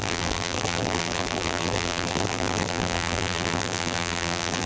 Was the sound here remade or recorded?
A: remade